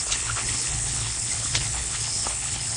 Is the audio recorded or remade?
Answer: remade